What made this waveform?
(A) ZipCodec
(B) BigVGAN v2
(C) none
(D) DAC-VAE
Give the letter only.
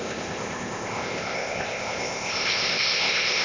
A